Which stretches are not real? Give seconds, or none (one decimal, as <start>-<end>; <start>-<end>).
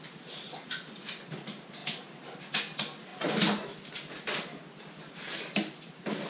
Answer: none